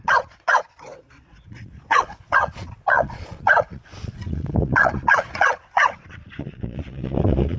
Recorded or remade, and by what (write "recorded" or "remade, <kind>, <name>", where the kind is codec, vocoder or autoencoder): remade, vocoder, Vocos